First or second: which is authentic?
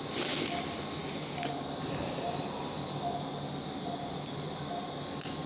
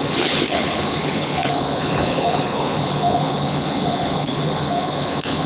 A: first